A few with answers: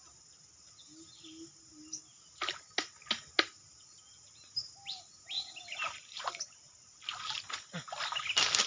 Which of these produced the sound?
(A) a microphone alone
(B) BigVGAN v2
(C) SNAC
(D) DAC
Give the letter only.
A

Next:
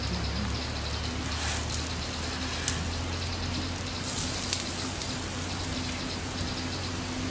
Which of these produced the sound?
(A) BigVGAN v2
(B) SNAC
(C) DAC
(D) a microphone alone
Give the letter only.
D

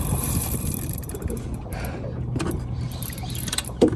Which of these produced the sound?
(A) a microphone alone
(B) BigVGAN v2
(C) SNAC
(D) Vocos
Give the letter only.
B